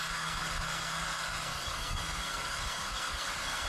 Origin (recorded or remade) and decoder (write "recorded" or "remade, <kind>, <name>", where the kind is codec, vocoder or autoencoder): remade, codec, SNAC